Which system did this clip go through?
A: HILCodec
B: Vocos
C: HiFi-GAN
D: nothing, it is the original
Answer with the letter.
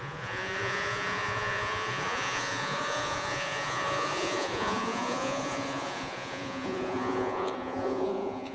B